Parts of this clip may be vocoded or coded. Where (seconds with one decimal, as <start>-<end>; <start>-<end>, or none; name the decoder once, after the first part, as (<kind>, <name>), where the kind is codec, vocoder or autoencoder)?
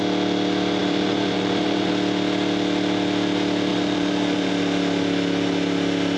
0.8-1.9 (vocoder, BigVGAN v2); 3.7-4.5